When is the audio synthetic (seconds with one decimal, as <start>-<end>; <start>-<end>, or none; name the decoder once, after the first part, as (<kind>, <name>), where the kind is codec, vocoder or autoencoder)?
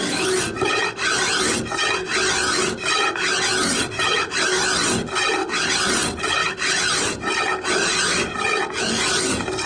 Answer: none